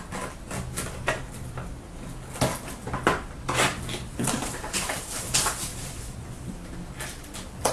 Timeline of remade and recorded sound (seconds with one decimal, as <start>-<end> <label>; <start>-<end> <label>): 0.0-4.1 recorded; 4.1-5.1 remade; 5.1-5.7 recorded; 5.7-6.3 remade; 6.3-7.7 recorded